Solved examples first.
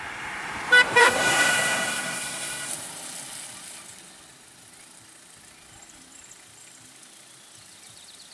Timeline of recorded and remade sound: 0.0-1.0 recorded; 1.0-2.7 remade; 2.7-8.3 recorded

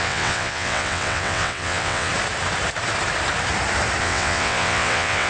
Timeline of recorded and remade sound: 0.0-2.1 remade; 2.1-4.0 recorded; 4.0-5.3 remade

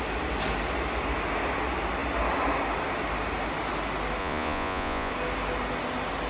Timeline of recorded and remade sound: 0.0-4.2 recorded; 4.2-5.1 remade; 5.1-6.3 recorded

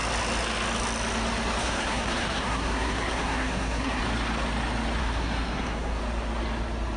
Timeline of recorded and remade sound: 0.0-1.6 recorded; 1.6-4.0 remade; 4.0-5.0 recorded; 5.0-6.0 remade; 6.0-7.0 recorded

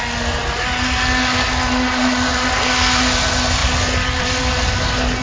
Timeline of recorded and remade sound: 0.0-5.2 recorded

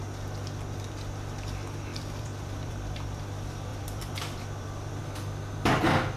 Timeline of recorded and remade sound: 0.0-1.9 recorded; 1.9-3.2 remade; 3.2-3.7 recorded; 3.7-5.0 remade; 5.0-6.2 recorded